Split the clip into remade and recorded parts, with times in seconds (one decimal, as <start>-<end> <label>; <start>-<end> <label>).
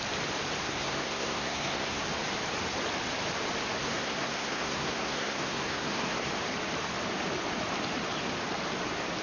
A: 0.0-0.6 recorded; 0.6-2.0 remade; 2.0-3.8 recorded; 3.8-6.3 remade; 6.3-9.2 recorded